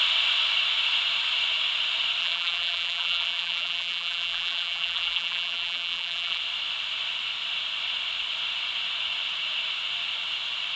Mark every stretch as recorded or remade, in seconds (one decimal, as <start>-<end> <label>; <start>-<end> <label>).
0.0-2.2 recorded; 2.2-6.4 remade; 6.4-10.8 recorded